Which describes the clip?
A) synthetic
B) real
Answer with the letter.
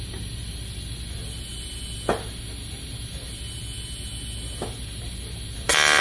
B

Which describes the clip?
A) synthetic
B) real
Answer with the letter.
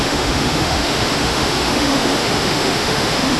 A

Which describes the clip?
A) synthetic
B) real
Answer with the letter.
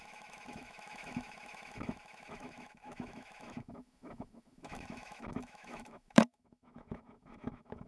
A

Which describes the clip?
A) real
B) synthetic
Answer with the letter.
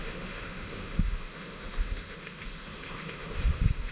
B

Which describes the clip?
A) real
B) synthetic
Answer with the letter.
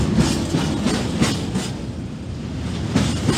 A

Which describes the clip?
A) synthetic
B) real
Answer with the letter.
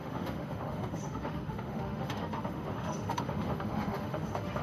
A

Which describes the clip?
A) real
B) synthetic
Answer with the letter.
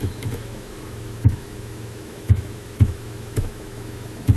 B